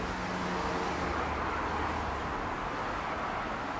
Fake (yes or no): no